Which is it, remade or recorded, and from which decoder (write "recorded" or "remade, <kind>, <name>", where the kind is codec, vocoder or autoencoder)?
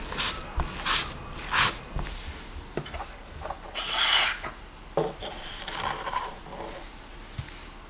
recorded